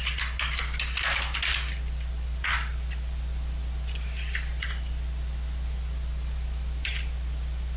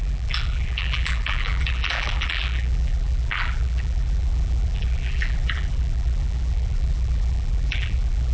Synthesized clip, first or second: second